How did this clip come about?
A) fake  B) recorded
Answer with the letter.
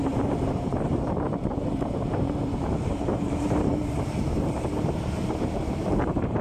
A